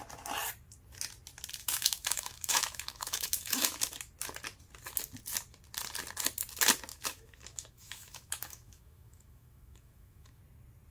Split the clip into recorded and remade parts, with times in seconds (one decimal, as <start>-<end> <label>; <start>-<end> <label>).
0.0-1.6 recorded; 1.6-3.8 remade; 3.8-6.9 recorded; 6.9-10.4 remade; 10.4-10.9 recorded